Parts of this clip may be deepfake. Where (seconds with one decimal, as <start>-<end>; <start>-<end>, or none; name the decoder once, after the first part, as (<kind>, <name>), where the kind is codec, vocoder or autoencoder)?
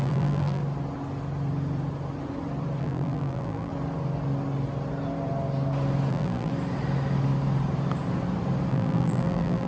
0.0-0.6 (vocoder, BigVGAN v2); 2.8-3.7; 6.1-6.5; 8.7-9.7